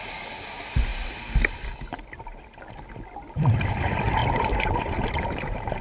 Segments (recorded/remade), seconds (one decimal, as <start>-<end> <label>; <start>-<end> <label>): 0.0-4.2 recorded; 4.2-5.8 remade